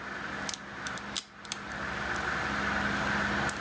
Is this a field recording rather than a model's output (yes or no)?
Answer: yes